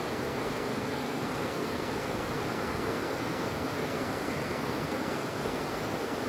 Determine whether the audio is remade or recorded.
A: remade